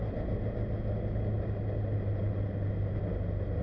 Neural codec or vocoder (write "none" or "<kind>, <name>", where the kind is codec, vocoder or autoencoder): none